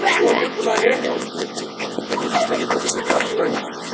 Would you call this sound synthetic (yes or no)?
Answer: yes